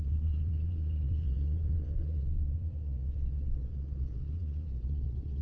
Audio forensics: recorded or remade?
remade